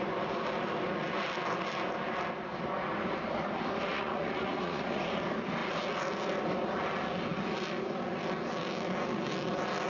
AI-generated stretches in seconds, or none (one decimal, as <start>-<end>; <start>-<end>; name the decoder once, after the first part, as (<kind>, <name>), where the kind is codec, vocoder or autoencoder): 3.9-5.0 (vocoder, Vocos)